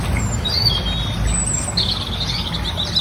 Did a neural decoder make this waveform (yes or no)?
no